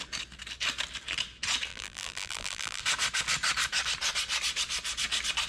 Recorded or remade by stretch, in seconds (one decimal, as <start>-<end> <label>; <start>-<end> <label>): 0.0-1.7 recorded; 1.7-2.8 remade; 2.8-5.5 recorded